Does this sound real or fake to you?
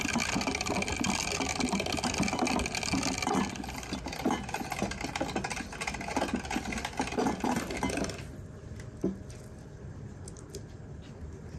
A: real